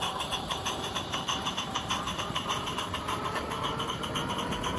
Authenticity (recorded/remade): remade